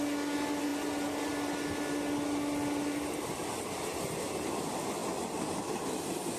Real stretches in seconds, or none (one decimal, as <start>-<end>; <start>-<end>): 0.0-6.4